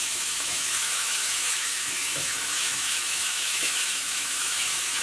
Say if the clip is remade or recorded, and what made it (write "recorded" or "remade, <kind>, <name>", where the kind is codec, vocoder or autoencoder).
remade, autoencoder, DAC-VAE